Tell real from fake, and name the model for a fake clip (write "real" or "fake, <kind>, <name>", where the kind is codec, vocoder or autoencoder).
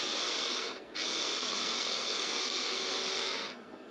fake, codec, SNAC